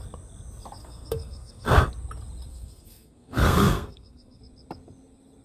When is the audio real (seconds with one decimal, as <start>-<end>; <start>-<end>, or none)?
0.0-0.8; 1.9-2.5; 4.4-5.4